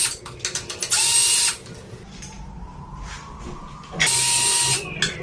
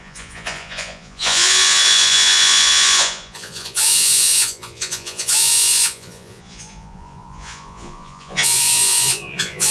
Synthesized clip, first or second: second